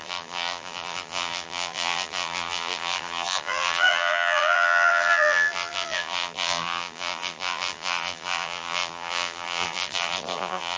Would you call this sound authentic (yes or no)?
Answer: no